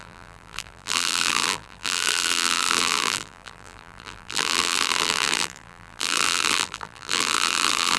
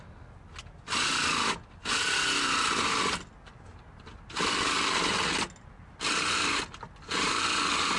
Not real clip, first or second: first